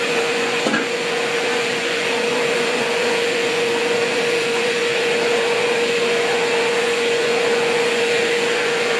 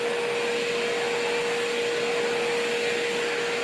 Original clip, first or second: second